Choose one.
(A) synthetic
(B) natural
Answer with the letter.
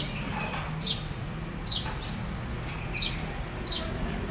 B